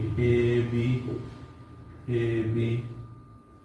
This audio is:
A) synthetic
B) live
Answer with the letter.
B